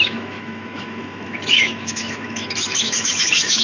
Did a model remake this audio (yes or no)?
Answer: yes